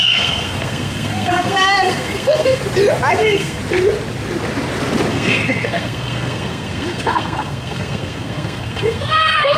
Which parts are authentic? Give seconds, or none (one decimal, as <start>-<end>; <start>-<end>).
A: 2.6-3.1; 3.6-5.1